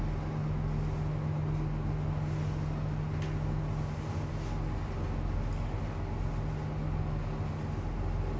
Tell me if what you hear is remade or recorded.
recorded